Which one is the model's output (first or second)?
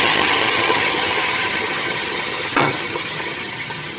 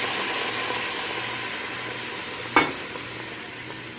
first